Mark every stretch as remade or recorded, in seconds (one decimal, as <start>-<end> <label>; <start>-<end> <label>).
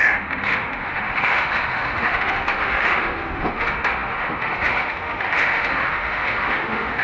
0.0-7.0 remade